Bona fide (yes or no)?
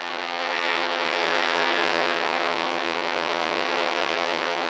no